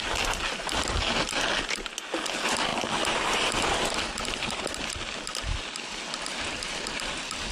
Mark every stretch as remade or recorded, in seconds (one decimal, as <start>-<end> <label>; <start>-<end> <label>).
0.0-7.5 recorded